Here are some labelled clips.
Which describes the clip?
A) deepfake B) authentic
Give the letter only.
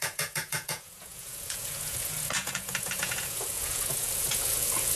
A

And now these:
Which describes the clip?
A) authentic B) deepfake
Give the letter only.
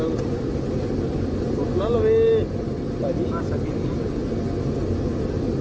A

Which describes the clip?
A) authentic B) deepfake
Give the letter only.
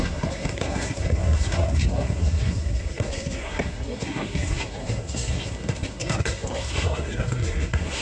B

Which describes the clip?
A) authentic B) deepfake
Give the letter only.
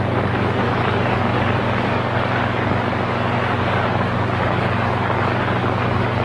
B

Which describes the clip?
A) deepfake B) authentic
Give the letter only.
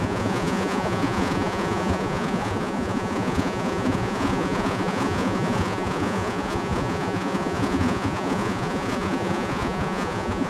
A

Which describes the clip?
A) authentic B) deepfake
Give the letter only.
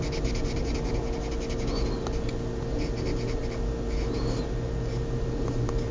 A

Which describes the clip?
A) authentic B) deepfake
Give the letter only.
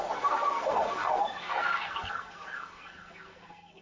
B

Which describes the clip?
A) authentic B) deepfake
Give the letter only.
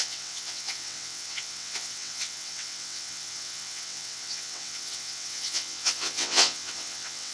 B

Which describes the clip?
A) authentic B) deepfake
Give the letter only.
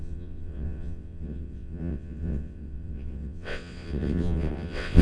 B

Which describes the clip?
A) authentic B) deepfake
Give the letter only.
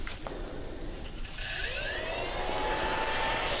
A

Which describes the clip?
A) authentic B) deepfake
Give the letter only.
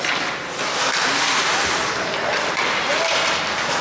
A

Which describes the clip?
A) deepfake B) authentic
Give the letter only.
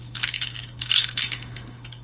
A